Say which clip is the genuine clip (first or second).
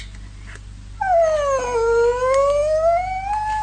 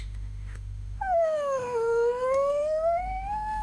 first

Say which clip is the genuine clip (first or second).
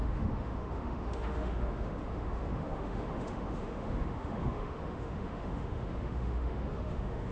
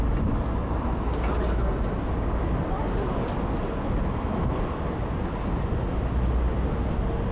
second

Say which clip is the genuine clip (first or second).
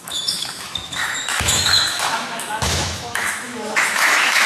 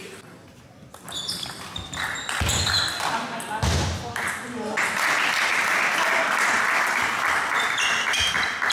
second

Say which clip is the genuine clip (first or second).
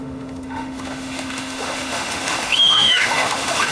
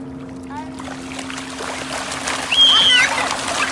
second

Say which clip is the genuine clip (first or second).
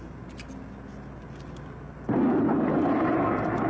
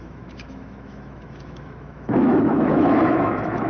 first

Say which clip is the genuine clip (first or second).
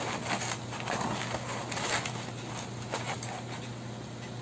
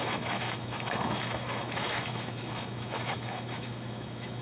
first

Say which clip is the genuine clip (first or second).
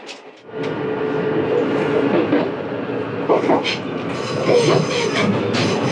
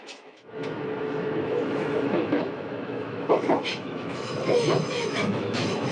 first